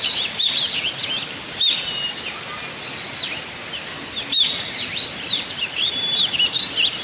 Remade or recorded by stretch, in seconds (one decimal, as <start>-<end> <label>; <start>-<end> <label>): 0.0-4.3 recorded; 4.3-6.6 remade; 6.6-7.0 recorded